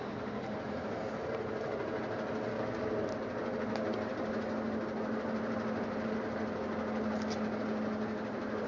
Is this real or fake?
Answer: real